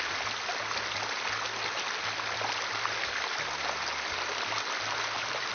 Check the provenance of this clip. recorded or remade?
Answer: recorded